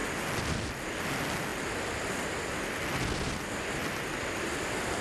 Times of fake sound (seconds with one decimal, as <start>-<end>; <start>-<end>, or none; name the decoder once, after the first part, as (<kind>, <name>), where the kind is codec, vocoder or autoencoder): none